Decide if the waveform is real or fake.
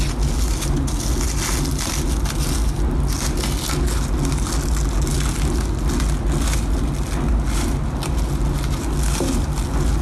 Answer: real